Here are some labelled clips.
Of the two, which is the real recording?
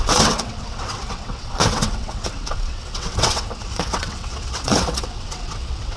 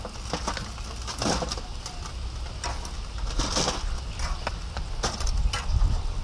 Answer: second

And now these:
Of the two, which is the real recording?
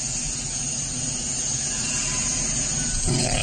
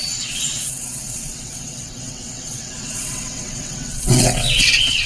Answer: first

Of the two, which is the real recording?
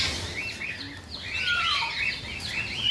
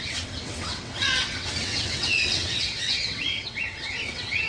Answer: first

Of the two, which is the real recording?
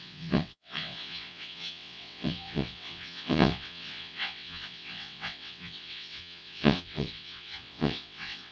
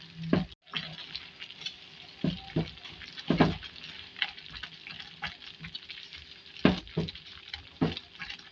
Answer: second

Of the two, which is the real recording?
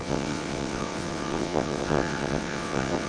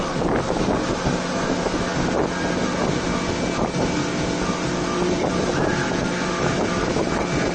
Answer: second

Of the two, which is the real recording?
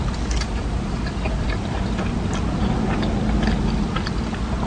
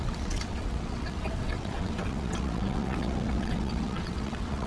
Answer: first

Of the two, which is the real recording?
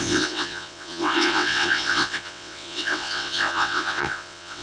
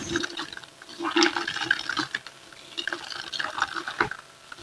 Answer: second